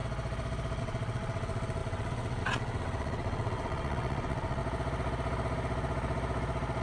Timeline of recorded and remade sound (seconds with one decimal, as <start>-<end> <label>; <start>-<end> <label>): 0.0-0.8 recorded; 0.8-4.6 remade; 4.6-6.8 recorded